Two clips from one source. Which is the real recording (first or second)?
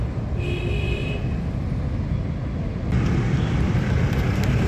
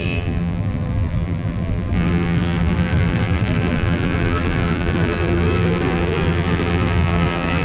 first